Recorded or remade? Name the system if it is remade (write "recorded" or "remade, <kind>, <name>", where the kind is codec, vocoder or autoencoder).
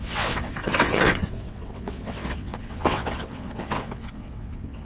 remade, vocoder, WaveNeXt